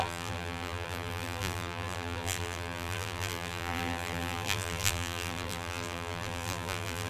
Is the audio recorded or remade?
remade